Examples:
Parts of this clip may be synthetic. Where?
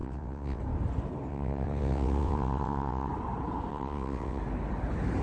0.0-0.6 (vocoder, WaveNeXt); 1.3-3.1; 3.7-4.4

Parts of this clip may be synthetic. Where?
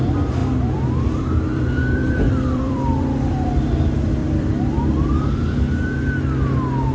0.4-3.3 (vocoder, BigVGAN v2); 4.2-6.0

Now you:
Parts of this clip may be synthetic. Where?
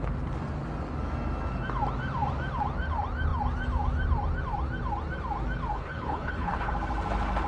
5.7-6.7 (codec, HILCodec)